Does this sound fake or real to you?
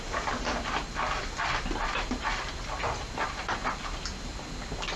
real